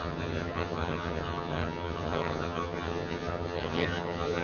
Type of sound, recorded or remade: remade